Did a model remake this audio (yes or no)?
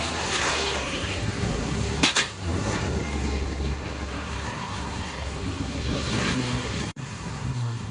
yes